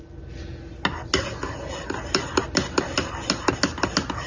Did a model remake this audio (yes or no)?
no